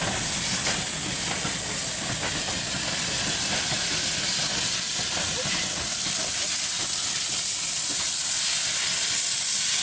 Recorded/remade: recorded